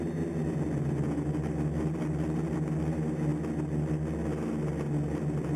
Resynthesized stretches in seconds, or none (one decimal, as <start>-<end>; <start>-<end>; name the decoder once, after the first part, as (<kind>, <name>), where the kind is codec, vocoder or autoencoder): none